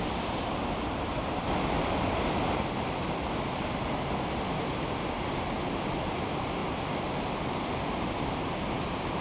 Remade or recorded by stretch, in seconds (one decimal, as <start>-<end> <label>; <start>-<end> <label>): 0.0-9.2 recorded